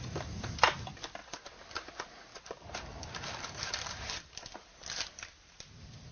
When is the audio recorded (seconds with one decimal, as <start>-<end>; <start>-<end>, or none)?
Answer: 0.0-6.1